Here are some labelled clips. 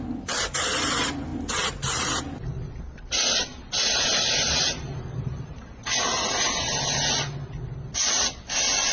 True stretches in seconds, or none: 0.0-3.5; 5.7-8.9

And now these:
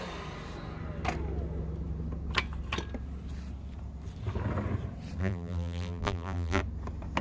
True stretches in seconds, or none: 0.0-5.2; 6.6-7.2

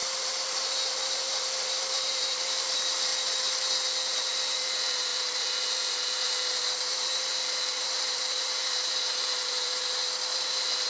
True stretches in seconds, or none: 3.1-4.1

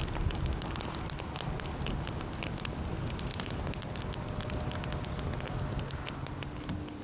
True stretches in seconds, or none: 0.0-7.0

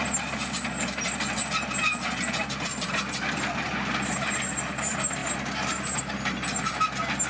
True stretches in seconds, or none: 0.0-7.3